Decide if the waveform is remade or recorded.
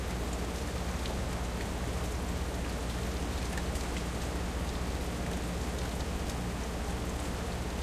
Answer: recorded